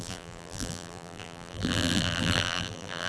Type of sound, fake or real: fake